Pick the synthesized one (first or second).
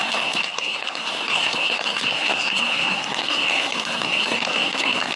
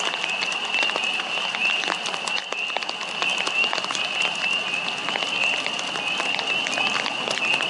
first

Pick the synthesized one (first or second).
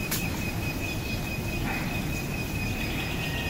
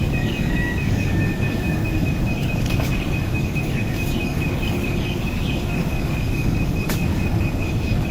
second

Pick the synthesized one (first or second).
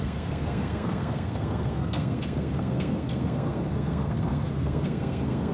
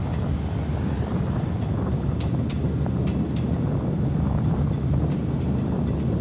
first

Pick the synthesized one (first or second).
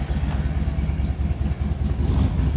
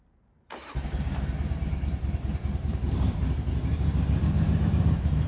second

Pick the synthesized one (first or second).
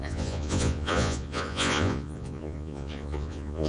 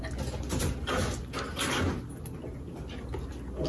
first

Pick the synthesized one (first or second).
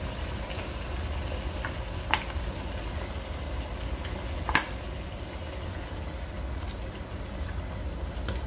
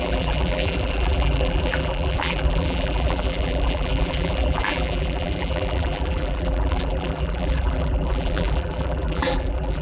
second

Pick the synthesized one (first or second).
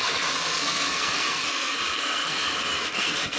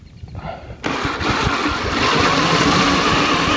first